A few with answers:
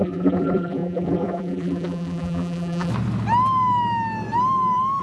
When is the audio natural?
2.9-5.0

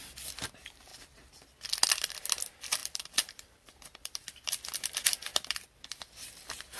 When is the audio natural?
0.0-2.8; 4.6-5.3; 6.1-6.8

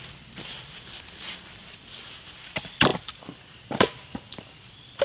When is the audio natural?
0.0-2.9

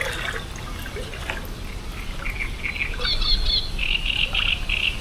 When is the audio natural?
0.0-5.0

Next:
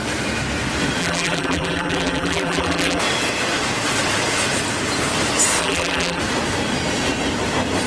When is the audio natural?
0.0-1.0; 3.0-5.6; 6.2-7.9

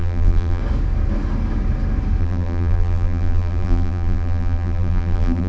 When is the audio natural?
0.6-2.2